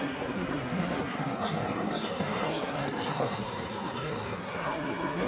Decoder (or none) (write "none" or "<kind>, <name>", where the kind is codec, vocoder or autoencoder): codec, SNAC